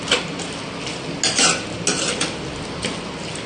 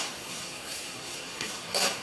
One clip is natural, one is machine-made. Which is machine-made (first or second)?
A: second